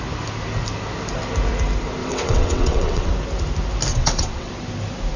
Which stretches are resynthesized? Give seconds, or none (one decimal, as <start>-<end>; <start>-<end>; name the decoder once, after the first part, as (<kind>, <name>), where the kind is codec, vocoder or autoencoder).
2.0-3.1 (vocoder, WaveNeXt); 3.9-4.5